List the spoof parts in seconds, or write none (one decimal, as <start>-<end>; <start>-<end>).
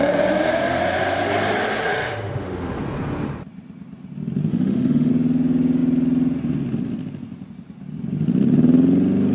1.9-2.8; 4.5-5.1